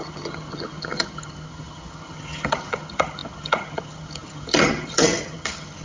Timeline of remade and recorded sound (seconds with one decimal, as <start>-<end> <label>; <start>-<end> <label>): 0.0-5.8 remade